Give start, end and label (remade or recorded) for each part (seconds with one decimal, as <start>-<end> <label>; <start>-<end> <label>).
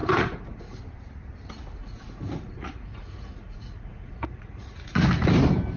0.0-0.8 remade; 0.8-1.8 recorded; 1.8-5.0 remade; 5.0-5.8 recorded